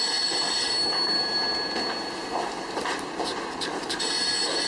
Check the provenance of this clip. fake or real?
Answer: real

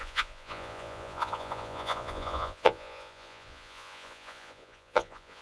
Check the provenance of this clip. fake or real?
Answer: fake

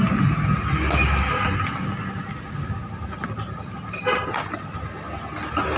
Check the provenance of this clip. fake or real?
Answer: real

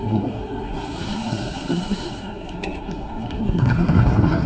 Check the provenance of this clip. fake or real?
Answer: fake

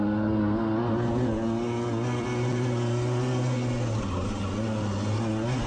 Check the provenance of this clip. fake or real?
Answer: real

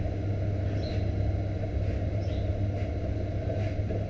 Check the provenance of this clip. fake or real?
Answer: real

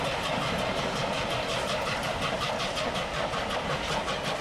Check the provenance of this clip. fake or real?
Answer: real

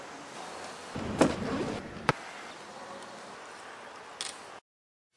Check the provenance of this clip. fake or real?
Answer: real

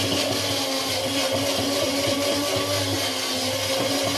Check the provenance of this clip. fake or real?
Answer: real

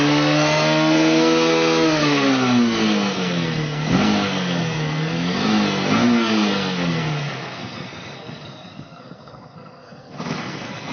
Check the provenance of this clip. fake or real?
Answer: fake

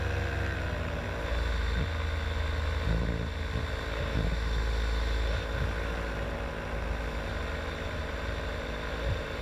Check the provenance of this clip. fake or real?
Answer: real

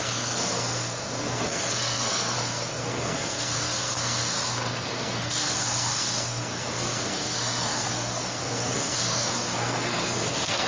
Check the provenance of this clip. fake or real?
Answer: fake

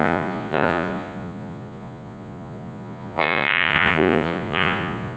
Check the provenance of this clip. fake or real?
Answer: fake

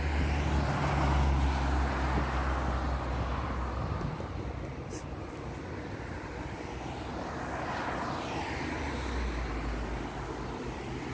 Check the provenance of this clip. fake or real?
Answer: real